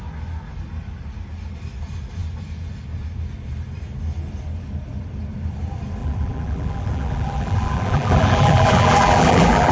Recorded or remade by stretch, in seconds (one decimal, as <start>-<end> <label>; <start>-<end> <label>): 0.0-6.0 recorded; 6.0-9.7 remade